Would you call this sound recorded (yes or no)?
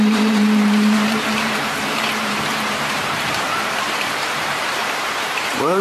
no